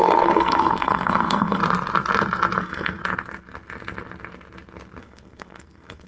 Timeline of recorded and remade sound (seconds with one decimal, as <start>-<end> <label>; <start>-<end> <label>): 0.0-1.6 remade; 1.6-2.6 recorded; 2.6-3.0 remade; 3.0-5.0 recorded; 5.0-6.1 remade